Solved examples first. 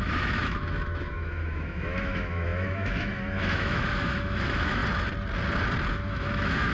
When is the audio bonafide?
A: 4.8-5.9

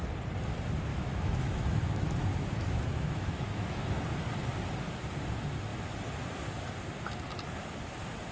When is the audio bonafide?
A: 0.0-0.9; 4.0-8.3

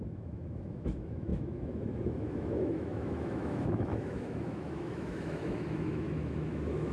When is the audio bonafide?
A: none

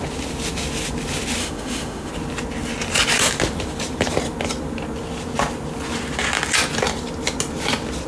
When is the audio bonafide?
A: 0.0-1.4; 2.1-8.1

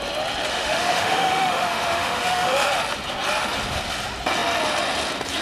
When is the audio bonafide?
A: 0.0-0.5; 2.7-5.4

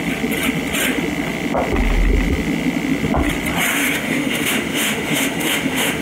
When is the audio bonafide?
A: 0.0-3.7

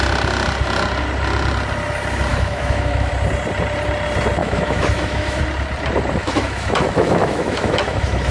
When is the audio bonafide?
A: 0.0-2.3; 3.1-4.4; 5.4-6.2